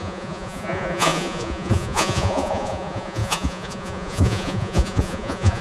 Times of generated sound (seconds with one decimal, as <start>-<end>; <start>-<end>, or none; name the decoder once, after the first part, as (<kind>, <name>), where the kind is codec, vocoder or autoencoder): 0.0-5.6 (vocoder, Vocos)